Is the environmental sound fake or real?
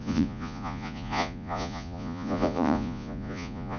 fake